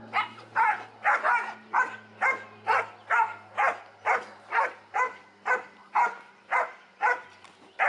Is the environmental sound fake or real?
real